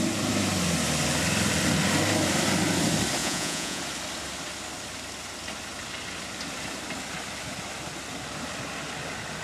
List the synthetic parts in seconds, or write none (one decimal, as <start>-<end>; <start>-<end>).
3.2-3.8